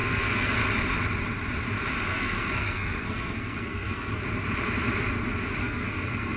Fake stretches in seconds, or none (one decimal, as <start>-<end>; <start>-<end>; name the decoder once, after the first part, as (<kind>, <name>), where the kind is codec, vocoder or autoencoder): 0.0-0.6 (codec, SNAC); 2.1-4.1; 5.6-6.4